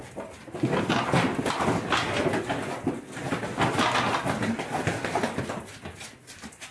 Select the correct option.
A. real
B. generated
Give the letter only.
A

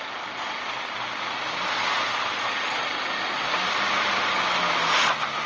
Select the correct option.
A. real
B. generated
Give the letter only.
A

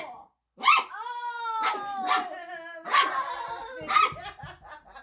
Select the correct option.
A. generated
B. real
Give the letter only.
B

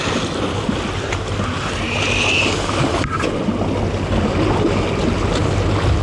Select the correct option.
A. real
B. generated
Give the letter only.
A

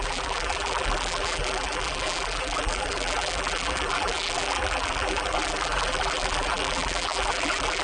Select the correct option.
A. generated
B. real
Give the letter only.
A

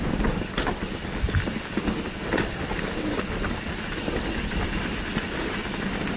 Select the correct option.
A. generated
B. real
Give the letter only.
B